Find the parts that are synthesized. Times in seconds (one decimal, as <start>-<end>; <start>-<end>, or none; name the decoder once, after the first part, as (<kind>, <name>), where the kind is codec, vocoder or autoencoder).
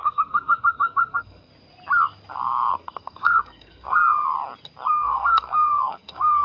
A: 0.0-1.5 (codec, SNAC); 2.7-4.0; 4.9-6.4